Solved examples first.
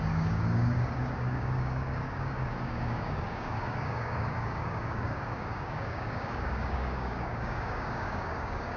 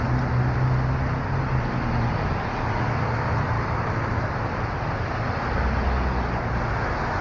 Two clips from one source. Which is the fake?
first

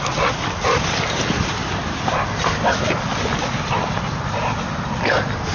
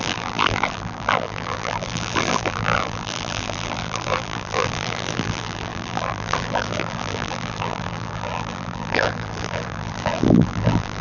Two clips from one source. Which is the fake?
second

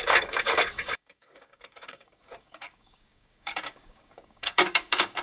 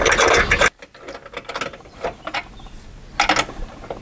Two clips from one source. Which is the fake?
first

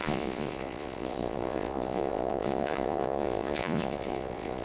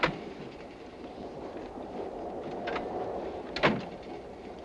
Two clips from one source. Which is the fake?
first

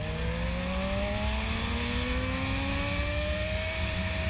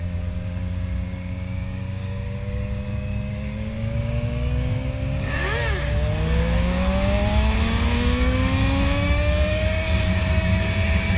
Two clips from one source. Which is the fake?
second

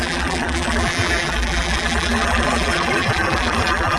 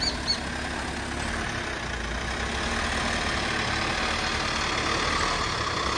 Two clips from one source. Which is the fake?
first